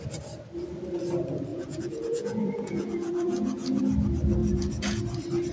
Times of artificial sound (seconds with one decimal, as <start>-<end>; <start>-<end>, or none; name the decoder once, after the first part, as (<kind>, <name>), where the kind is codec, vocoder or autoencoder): 1.5-3.8 (vocoder, Vocos); 4.4-5.0